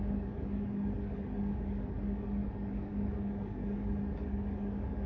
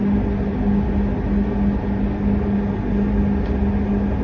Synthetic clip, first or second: first